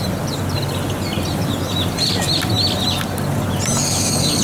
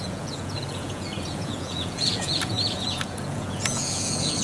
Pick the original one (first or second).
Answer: first